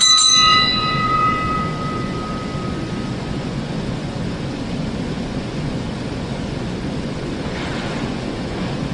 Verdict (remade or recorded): remade